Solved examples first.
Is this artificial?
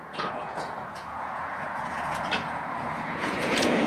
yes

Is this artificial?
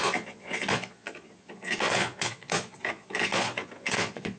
yes